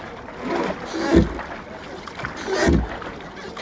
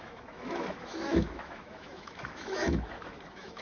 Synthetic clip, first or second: second